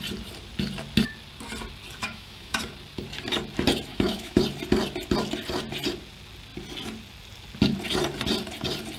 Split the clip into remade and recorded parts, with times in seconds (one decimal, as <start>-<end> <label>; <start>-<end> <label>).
0.0-2.0 recorded; 2.0-2.6 remade; 2.6-3.9 recorded; 3.9-4.4 remade; 4.4-9.0 recorded